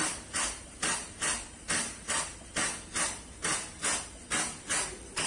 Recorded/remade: recorded